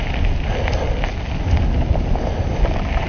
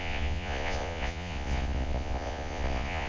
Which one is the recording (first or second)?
first